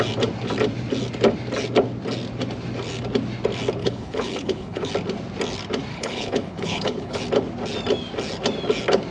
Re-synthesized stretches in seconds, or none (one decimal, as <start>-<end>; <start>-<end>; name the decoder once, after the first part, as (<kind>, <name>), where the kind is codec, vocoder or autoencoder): 3.8-4.9 (codec, HILCodec); 5.9-7.2